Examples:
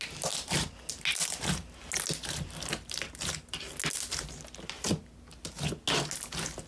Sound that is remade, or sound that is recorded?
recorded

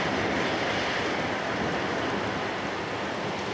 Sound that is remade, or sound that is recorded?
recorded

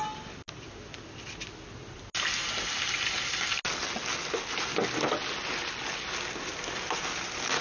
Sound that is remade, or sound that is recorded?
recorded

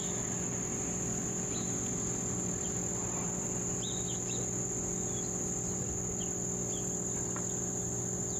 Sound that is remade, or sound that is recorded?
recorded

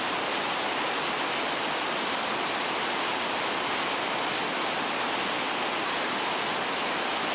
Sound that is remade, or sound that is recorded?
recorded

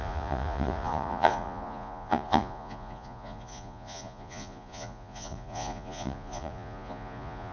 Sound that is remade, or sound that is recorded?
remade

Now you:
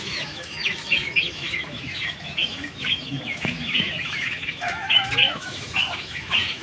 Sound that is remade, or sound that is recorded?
remade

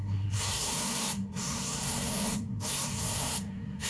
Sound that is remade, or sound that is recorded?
remade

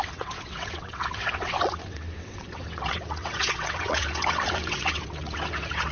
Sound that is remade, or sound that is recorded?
remade